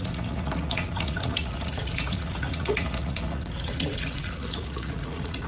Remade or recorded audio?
remade